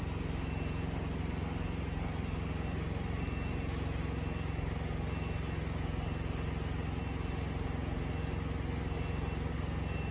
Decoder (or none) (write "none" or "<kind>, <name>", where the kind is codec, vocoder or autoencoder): none